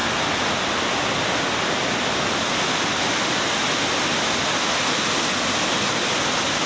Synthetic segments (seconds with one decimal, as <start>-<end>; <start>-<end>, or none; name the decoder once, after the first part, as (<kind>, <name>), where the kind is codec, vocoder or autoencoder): none